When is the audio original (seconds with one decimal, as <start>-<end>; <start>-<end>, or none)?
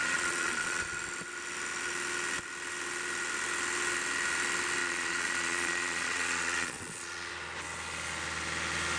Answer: 0.8-4.8; 7.3-9.0